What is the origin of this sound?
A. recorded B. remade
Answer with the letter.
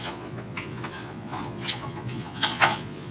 B